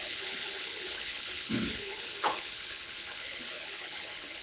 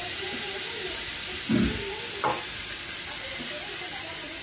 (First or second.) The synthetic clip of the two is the first